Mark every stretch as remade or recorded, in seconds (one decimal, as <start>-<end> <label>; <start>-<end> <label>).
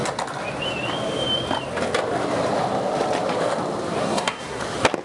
0.0-4.0 recorded; 4.0-4.6 remade; 4.6-5.0 recorded